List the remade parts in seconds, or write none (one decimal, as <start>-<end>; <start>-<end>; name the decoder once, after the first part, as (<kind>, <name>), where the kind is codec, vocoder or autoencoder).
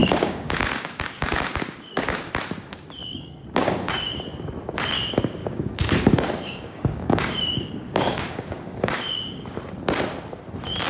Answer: 0.0-2.3 (codec, DAC); 3.0-4.2; 5.4-9.6